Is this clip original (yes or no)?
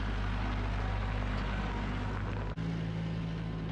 yes